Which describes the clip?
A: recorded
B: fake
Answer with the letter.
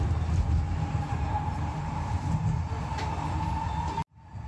A